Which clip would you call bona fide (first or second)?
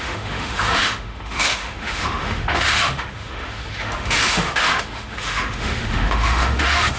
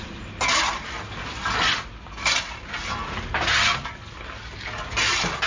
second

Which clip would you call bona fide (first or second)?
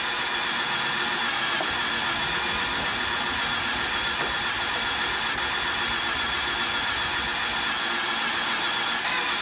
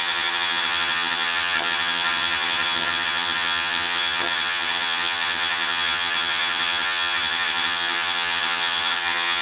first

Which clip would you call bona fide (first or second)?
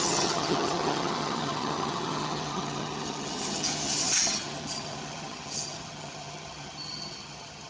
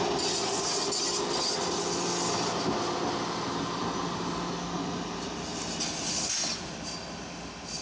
second